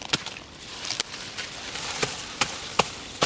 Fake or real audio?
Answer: fake